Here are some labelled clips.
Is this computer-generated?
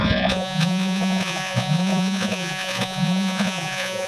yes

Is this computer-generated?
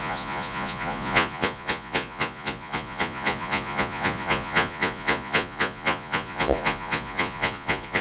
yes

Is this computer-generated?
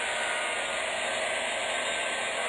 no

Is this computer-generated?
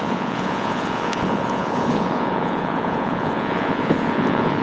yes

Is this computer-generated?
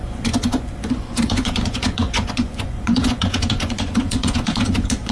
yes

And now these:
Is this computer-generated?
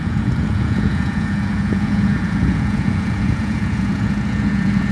yes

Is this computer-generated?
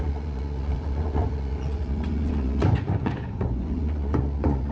yes